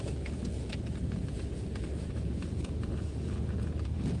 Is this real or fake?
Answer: fake